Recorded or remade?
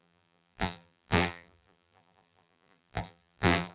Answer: remade